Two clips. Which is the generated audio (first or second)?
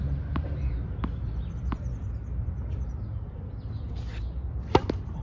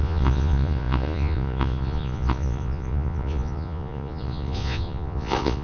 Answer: second